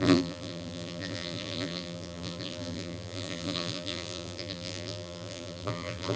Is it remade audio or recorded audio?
remade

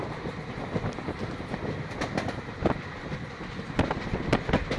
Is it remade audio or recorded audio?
recorded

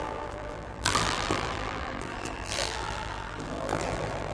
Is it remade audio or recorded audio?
remade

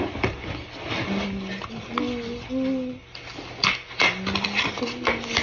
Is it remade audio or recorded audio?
recorded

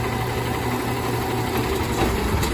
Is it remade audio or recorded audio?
recorded